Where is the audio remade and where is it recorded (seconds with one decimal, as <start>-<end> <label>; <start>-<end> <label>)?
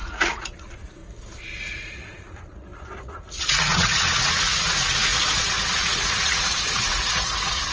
0.0-1.0 remade; 1.0-1.6 recorded; 1.6-5.1 remade; 5.1-5.7 recorded; 5.7-7.7 remade